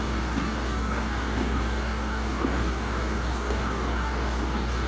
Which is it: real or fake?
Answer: fake